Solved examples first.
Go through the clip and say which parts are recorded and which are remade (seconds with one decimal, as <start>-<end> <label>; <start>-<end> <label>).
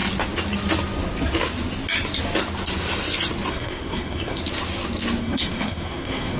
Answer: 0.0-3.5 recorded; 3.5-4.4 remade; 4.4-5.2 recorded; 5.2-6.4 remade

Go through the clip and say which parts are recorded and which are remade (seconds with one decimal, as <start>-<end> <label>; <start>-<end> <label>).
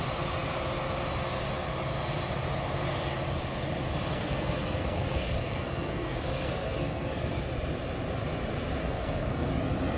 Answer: 0.0-4.1 recorded; 4.1-7.4 remade; 7.4-8.8 recorded; 8.8-9.5 remade; 9.5-10.0 recorded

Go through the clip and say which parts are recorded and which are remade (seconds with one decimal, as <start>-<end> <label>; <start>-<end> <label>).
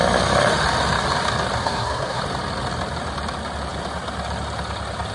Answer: 0.0-1.6 recorded; 1.6-2.2 remade; 2.2-5.1 recorded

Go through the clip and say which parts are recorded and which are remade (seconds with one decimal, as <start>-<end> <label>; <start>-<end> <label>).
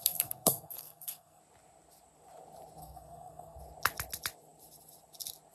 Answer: 0.0-1.4 remade; 1.4-2.8 recorded; 2.8-3.6 remade; 3.6-5.5 recorded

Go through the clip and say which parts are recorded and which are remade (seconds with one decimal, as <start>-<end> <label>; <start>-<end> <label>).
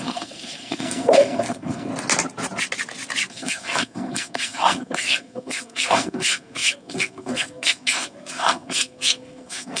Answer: 0.0-1.9 remade; 1.9-3.3 recorded; 3.3-9.8 remade